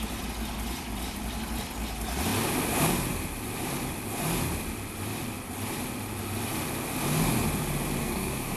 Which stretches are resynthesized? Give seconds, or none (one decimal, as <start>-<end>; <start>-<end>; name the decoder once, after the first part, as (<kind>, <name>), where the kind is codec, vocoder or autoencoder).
8.0-8.6 (codec, SNAC)